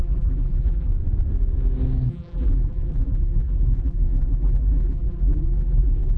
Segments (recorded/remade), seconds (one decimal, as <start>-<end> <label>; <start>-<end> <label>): 0.0-0.9 remade; 0.9-2.1 recorded; 2.1-6.2 remade